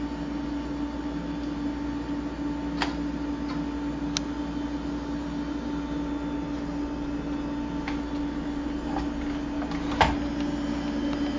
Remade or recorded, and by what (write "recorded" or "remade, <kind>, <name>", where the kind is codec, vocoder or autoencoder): recorded